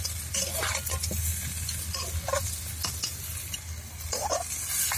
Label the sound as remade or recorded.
recorded